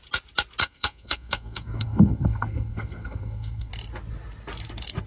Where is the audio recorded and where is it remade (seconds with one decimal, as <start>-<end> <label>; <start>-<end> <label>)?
0.0-0.6 recorded; 0.6-3.7 remade; 3.7-5.1 recorded